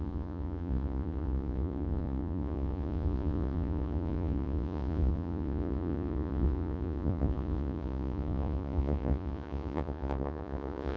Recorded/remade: remade